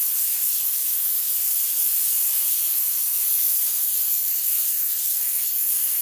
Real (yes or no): no